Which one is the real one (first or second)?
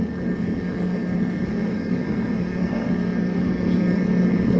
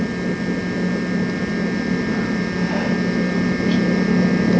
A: second